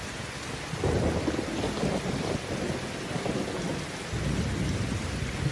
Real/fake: real